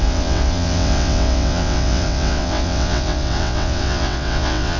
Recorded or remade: remade